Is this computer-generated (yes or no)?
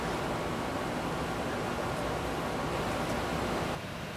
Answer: no